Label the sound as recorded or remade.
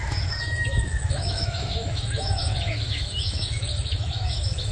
remade